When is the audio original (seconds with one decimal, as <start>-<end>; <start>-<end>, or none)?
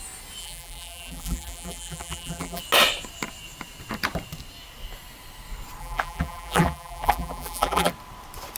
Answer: 0.0-0.4; 2.6-5.8; 7.9-8.6